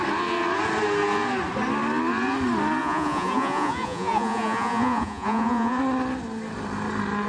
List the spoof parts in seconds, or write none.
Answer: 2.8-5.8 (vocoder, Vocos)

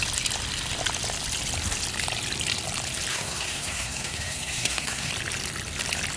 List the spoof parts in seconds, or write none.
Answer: 3.1-5.1 (codec, SNAC)

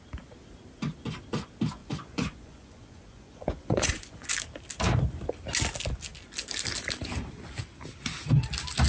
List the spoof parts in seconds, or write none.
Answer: 1.8-4.3 (vocoder, Vocos)

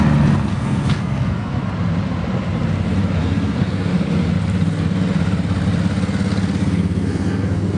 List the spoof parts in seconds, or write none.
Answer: 0.5-1.6 (codec, SNAC); 3.2-3.9; 6.6-7.8

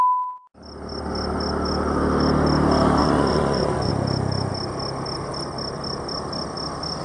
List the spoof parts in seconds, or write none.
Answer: 3.0-3.9 (vocoder, Vocos)

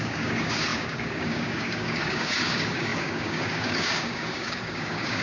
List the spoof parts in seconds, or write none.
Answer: 0.0-5.2 (codec, DAC)

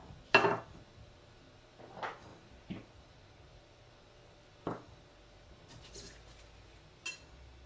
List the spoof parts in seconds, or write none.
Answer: none